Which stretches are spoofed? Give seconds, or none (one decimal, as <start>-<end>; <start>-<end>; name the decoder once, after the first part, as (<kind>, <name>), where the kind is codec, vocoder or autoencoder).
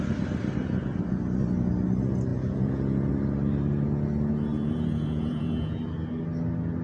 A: 2.3-3.1 (vocoder, Vocos); 4.5-5.8